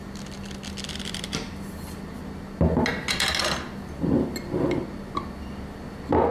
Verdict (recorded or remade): recorded